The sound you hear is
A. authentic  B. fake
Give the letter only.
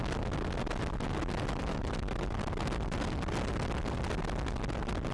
A